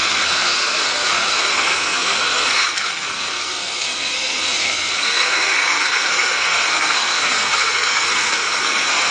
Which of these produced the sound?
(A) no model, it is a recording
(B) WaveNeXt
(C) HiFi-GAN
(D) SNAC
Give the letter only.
D